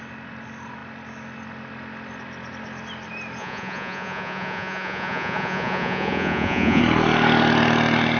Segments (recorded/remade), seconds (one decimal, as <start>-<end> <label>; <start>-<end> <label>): 0.0-3.4 recorded; 3.4-6.8 remade; 6.8-8.2 recorded